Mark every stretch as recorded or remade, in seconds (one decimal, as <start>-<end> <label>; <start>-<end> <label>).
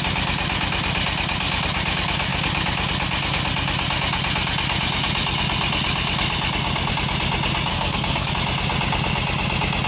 0.0-7.7 recorded; 7.7-8.3 remade; 8.3-9.9 recorded